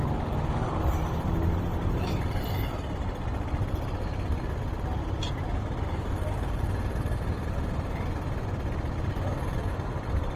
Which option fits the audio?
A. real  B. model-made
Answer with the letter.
A